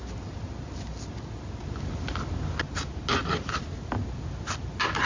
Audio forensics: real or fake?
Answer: real